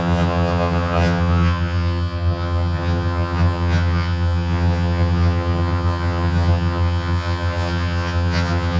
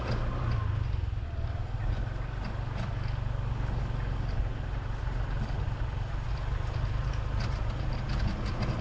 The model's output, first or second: first